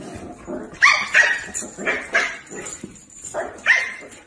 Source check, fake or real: real